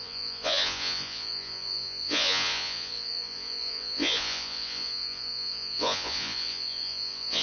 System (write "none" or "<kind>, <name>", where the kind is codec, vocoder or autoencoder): vocoder, Vocos